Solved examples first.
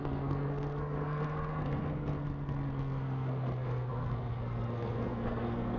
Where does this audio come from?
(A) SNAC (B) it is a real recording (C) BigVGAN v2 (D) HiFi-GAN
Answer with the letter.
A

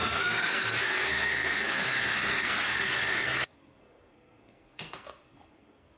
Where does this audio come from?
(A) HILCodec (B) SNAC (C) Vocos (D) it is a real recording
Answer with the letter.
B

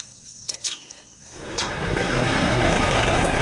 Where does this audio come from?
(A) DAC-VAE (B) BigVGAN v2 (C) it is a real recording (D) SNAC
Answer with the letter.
D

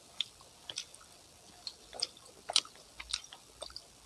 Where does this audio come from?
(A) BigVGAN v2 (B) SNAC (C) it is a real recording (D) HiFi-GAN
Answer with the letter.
C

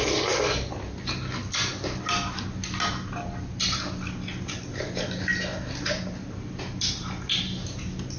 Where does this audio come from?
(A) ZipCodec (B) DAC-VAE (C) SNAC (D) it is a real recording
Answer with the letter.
D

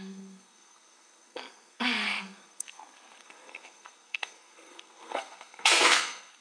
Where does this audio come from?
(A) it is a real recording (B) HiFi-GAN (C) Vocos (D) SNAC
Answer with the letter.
D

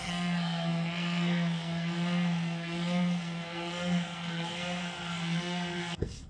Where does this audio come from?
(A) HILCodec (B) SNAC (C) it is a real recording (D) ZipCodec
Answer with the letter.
B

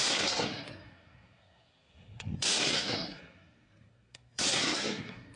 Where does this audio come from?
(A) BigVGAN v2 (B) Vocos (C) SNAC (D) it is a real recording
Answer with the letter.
C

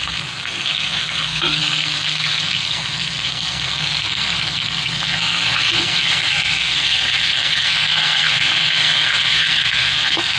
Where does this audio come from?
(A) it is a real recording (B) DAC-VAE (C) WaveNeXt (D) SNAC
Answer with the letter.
D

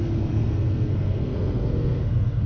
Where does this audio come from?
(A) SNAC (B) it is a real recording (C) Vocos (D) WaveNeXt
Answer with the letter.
A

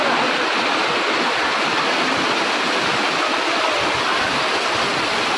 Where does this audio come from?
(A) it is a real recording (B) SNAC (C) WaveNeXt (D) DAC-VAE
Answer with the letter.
A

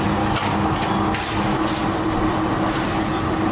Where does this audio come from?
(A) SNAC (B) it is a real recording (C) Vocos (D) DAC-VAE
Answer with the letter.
B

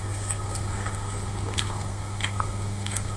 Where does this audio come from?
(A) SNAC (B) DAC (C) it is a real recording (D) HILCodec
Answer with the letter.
A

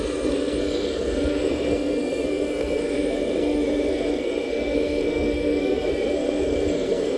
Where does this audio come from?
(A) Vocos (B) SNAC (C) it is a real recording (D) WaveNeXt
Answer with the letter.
B